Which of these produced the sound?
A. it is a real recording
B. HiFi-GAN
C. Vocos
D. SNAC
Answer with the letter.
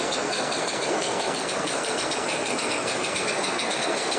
D